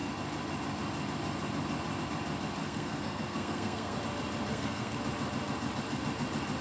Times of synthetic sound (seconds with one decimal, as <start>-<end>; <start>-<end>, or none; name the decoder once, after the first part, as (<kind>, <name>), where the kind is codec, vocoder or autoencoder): 2.6-4.0 (codec, SNAC); 4.5-5.0